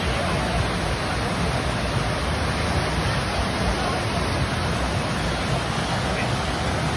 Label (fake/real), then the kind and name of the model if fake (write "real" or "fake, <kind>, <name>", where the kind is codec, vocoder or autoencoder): real